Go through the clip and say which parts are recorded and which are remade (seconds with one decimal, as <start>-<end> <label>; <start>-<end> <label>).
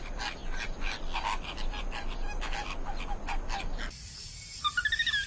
0.0-5.3 recorded